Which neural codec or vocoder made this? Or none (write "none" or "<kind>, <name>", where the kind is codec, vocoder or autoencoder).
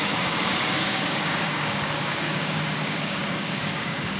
codec, DAC